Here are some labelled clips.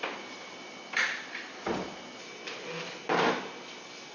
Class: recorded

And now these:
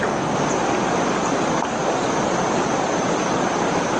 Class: recorded